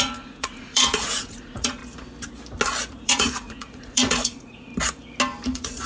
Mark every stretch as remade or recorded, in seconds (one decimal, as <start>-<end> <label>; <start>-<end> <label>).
0.0-1.8 remade; 1.8-2.9 recorded; 2.9-4.7 remade; 4.7-5.4 recorded; 5.4-5.9 remade